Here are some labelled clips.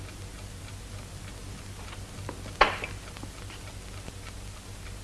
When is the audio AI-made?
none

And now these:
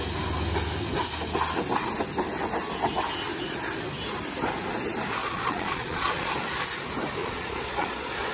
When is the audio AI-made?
5.2-6.3; 7.2-8.3

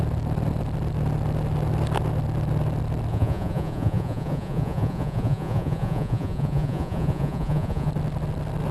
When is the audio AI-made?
3.1-7.9

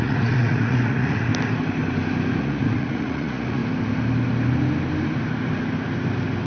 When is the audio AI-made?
0.0-1.3; 2.4-3.6

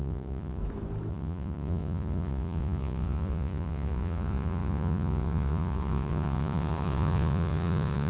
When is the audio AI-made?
0.0-0.6; 1.1-8.1

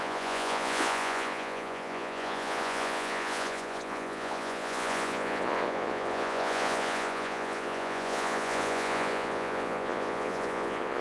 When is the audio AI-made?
0.0-11.0

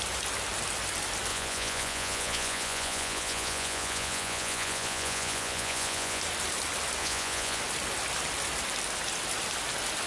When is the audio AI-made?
1.3-6.2; 7.0-7.6